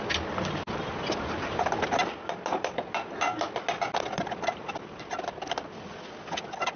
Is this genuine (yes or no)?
yes